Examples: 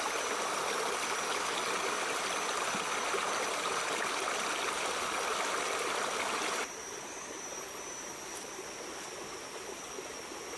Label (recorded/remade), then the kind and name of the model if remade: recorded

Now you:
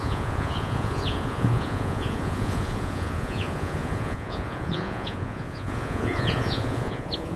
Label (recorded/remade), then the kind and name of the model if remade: remade, vocoder, Vocos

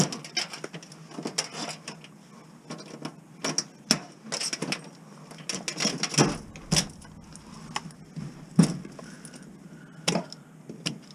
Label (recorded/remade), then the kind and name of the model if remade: recorded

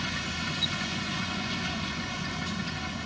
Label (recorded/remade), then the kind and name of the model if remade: remade, vocoder, Vocos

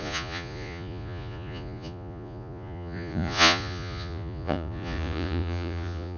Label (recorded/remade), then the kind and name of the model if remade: remade, vocoder, Vocos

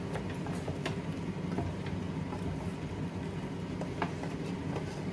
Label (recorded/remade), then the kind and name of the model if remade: recorded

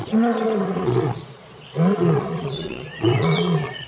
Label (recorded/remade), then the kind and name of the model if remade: remade, vocoder, Vocos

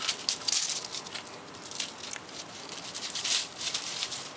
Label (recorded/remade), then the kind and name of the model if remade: recorded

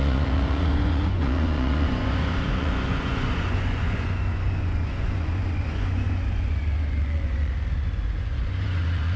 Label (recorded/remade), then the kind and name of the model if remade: remade, vocoder, Vocos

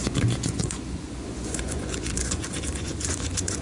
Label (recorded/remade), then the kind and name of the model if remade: remade, vocoder, Vocos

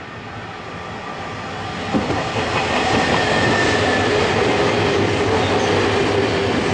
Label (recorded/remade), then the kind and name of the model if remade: recorded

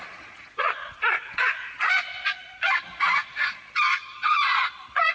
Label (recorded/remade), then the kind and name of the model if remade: remade, vocoder, Vocos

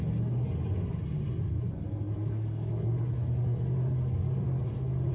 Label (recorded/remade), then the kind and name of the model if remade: recorded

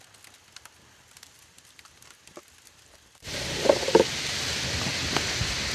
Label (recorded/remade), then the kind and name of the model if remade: recorded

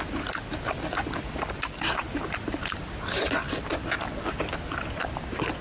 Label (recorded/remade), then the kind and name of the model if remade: recorded